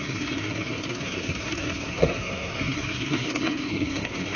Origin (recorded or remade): remade